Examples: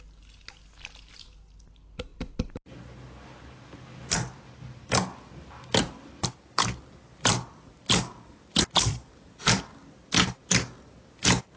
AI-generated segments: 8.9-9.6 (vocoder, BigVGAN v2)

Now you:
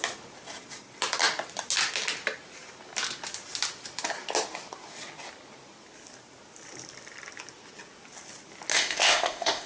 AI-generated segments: 8.7-9.7 (codec, ZipCodec)

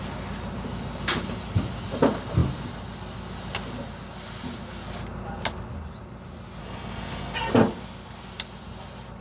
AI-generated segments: 6.6-7.5 (codec, SNAC)

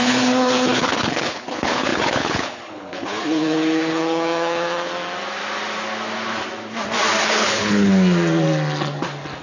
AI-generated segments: 0.0-4.9 (codec, HILCodec); 7.2-7.9

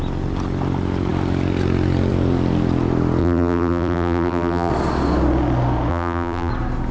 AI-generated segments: 3.2-4.7 (vocoder, BigVGAN v2); 5.9-6.5

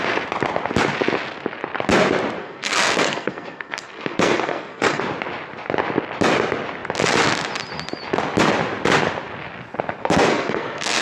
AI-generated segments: 2.4-5.0 (codec, SNAC); 10.0-11.0